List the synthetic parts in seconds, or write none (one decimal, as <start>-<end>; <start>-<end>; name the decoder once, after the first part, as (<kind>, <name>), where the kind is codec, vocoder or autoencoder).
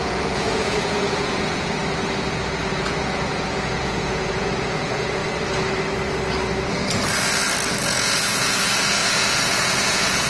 0.0-1.8 (vocoder, Vocos); 2.6-5.2; 7.8-10.3